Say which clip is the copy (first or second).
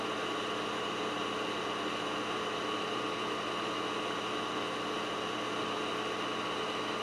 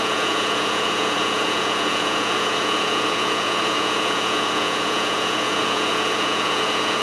second